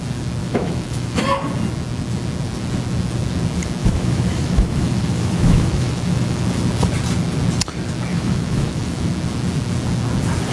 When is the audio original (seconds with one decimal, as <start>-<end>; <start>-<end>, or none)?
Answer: 0.0-0.4; 1.2-3.8; 6.4-8.1; 9.1-10.5